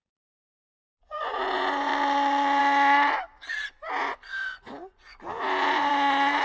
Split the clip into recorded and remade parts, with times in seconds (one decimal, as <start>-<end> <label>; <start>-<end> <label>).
0.0-1.9 remade; 1.9-2.6 recorded; 2.6-6.4 remade